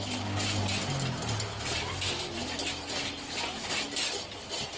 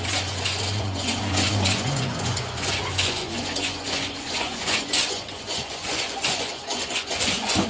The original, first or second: first